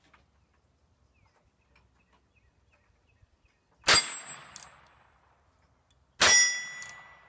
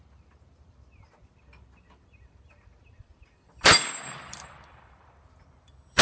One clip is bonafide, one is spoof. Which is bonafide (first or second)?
first